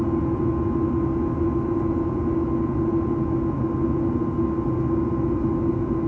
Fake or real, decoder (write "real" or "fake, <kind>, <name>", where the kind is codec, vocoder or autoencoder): real